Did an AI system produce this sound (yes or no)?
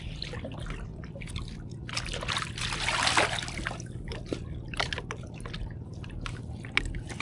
no